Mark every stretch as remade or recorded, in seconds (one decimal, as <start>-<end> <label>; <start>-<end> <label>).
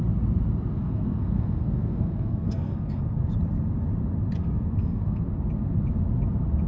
0.0-0.7 recorded; 0.7-3.0 remade; 3.0-4.4 recorded; 4.4-5.2 remade; 5.2-6.7 recorded